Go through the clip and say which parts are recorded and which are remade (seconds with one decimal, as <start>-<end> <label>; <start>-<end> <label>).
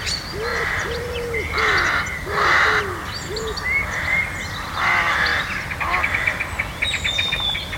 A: 0.0-7.8 recorded